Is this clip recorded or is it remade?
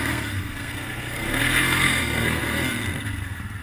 remade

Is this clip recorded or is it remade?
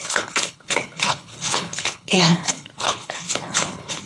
remade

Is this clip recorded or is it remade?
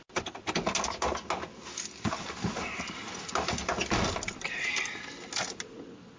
recorded